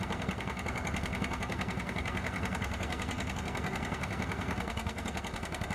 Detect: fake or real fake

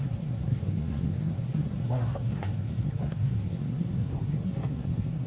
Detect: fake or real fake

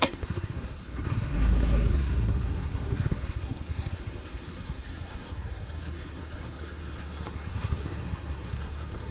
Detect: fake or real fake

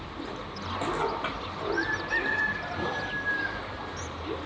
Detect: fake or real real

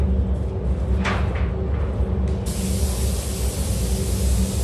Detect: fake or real real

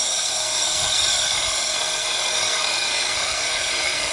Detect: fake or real fake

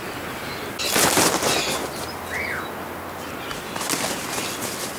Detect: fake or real real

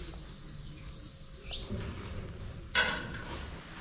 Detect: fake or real real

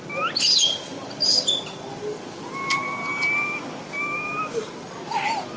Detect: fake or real real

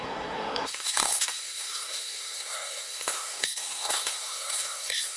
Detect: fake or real fake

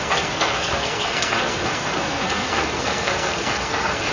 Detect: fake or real fake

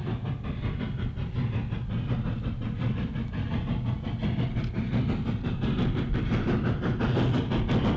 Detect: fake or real real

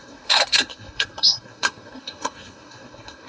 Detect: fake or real fake